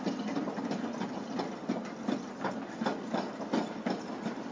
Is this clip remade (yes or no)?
no